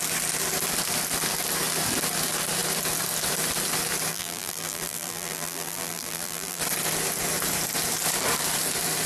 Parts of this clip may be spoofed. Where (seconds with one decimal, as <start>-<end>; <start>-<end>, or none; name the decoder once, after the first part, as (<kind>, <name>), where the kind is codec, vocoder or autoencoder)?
4.1-6.6 (vocoder, BigVGAN v2)